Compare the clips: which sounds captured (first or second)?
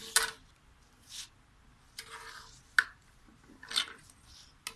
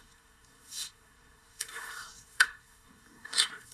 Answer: first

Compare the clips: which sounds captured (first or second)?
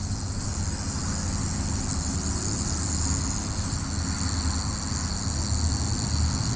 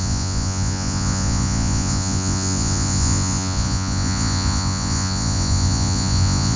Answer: first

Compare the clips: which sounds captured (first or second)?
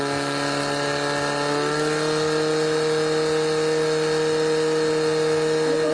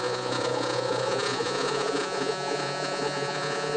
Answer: first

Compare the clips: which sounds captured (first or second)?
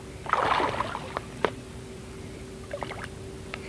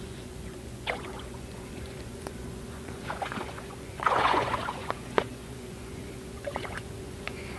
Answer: first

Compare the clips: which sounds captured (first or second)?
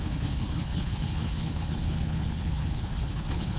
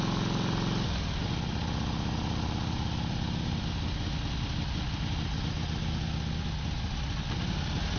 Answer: second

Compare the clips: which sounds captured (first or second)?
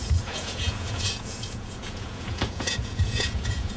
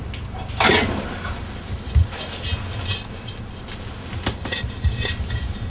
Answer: second